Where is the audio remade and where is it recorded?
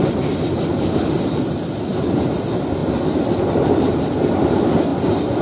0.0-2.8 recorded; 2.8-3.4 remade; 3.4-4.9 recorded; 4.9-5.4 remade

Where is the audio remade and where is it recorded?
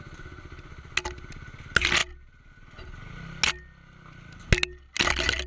0.0-5.5 recorded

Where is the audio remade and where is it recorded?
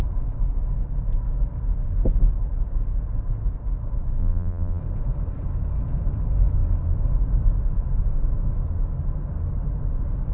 0.0-4.2 recorded; 4.2-4.8 remade; 4.8-10.3 recorded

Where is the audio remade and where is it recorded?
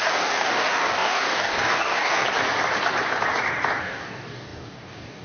0.0-2.2 remade; 2.2-3.8 recorded; 3.8-5.2 remade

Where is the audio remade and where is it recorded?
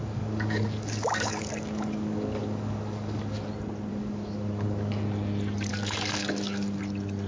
0.0-3.5 remade; 3.5-3.9 recorded; 3.9-5.0 remade; 5.0-5.7 recorded; 5.7-6.8 remade; 6.8-7.3 recorded